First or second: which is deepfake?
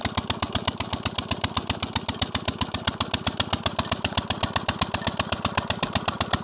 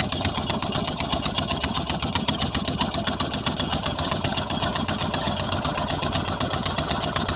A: second